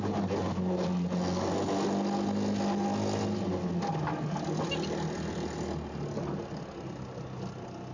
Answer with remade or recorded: recorded